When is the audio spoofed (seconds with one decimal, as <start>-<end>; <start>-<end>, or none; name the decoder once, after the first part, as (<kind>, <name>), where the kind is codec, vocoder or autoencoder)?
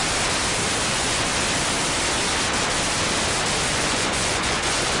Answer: 0.9-1.3 (vocoder, Vocos); 3.7-5.0